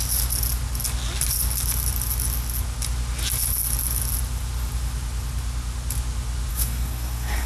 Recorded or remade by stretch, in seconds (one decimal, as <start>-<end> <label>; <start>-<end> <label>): 0.0-6.5 recorded; 6.5-7.5 remade